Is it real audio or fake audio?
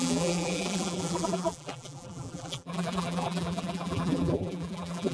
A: fake